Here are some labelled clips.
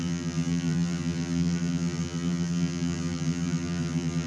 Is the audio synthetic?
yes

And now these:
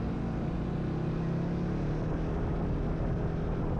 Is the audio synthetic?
no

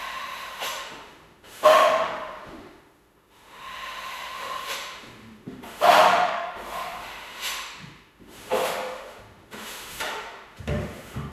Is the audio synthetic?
yes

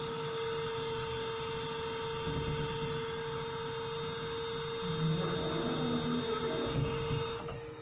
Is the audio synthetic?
no